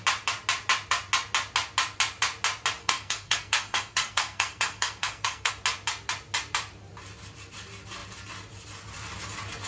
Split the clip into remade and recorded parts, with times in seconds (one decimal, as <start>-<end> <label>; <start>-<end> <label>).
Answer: 0.0-2.8 recorded; 2.8-5.5 remade; 5.5-9.7 recorded